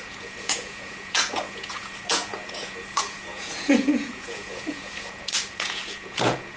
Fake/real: fake